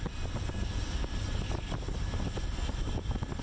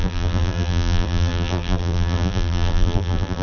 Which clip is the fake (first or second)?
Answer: second